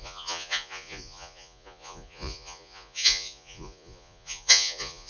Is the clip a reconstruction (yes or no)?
yes